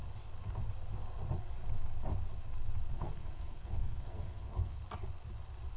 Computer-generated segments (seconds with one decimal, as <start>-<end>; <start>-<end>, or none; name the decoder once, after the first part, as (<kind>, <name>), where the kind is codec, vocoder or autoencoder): 2.9-4.8 (codec, SNAC)